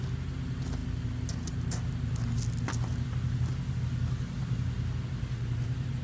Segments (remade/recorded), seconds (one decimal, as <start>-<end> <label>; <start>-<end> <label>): 0.0-6.0 recorded